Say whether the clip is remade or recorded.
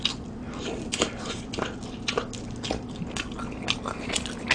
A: recorded